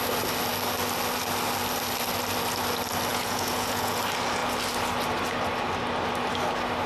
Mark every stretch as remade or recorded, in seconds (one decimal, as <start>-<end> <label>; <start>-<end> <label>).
0.0-3.1 recorded; 3.1-4.0 remade; 4.0-6.9 recorded